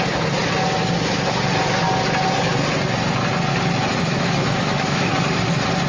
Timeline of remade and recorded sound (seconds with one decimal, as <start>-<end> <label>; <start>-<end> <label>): 0.0-4.1 recorded; 4.1-5.1 remade; 5.1-5.9 recorded